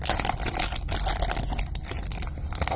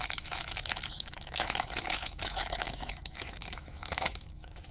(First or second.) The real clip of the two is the first